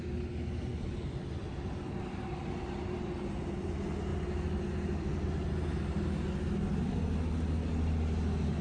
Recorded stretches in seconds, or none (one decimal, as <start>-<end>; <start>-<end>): 0.0-8.6